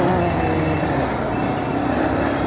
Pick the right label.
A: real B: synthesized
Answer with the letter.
A